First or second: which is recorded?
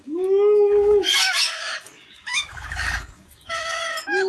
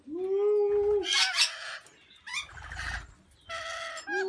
second